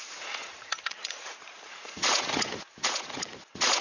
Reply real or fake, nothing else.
fake